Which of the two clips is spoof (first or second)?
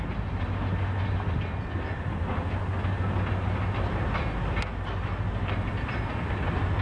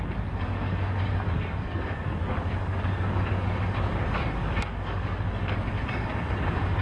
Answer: second